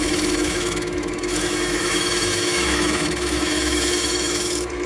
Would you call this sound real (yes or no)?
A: no